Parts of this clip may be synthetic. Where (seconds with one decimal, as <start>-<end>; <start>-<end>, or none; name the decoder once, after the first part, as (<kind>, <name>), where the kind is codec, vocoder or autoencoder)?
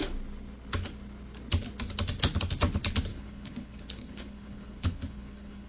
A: 3.1-5.7 (codec, HILCodec)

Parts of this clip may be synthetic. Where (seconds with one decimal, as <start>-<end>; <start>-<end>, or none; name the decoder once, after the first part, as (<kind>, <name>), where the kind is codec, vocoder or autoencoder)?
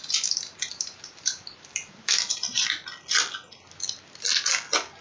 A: 0.7-2.6 (vocoder, BigVGAN v2)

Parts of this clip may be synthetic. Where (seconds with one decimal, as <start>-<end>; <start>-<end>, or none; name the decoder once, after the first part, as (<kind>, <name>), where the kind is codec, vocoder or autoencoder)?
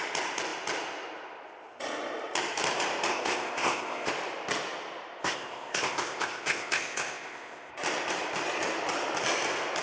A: 3.1-4.1 (codec, ZipCodec); 5.2-7.7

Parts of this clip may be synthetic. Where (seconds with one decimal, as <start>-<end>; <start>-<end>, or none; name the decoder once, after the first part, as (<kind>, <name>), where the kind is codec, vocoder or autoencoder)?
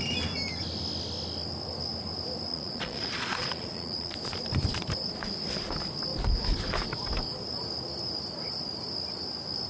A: 2.5-4.1 (vocoder, Vocos)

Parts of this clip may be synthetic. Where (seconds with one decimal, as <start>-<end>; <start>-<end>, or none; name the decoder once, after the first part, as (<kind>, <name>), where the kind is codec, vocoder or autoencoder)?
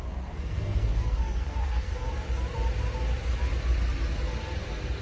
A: 0.0-1.9 (codec, SNAC)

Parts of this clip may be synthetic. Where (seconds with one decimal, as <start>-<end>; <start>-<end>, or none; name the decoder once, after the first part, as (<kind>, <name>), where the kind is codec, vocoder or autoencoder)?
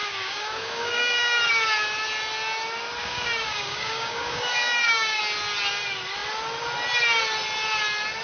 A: 0.0-1.5 (codec, DAC); 3.0-5.2